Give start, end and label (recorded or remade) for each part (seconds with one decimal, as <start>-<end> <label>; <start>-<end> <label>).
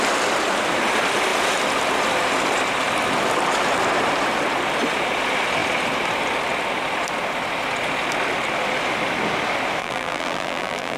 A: 0.0-9.8 recorded; 9.8-11.0 remade